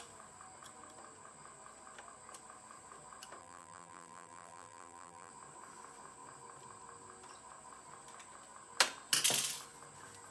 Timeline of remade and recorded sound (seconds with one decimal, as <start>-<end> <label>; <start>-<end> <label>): 0.0-3.4 recorded; 3.4-5.3 remade; 5.3-10.3 recorded